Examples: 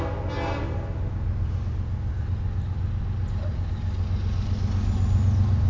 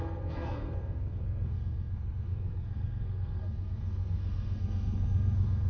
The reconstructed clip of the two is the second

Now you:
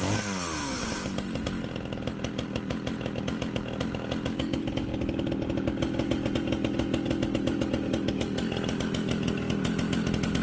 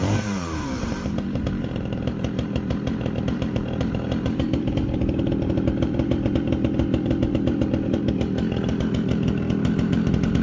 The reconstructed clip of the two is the second